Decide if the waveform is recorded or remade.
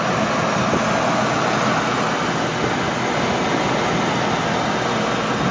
recorded